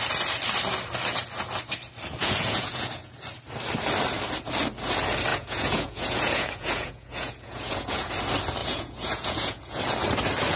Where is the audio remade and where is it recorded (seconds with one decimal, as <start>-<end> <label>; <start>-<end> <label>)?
0.0-2.2 recorded; 2.2-3.2 remade; 3.2-5.3 recorded; 5.3-8.1 remade; 8.1-8.6 recorded; 8.6-9.8 remade; 9.8-10.6 recorded